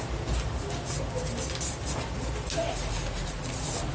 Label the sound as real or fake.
real